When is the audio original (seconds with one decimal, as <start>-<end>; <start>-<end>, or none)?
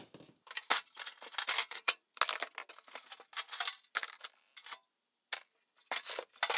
0.0-1.6; 2.2-6.6